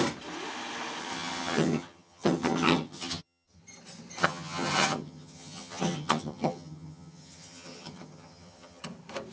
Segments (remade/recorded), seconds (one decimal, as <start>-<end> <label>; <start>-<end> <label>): 0.0-1.0 recorded; 1.0-3.6 remade; 3.6-4.2 recorded; 4.2-8.8 remade; 8.8-9.3 recorded